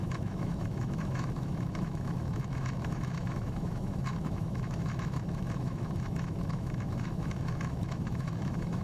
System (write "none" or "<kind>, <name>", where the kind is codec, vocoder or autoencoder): autoencoder, DAC-VAE